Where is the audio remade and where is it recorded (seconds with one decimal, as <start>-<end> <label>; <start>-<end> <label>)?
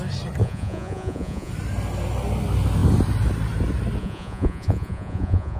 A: 0.0-0.4 recorded; 0.4-1.5 remade; 1.5-4.0 recorded; 4.0-5.6 remade